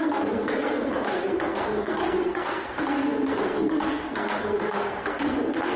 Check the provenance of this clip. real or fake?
fake